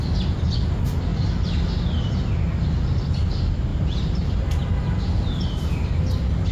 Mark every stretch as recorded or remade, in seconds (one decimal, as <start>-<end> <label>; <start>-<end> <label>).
0.0-6.5 recorded

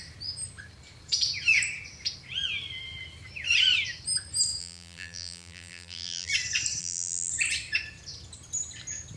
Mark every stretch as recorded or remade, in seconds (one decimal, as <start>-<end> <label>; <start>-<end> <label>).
0.0-4.6 recorded; 4.6-6.3 remade; 6.3-6.8 recorded; 6.8-7.3 remade; 7.3-9.2 recorded